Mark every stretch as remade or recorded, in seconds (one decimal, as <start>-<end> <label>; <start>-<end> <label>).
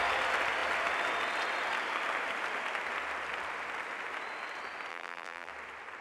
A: 0.0-4.9 recorded; 4.9-5.5 remade; 5.5-6.0 recorded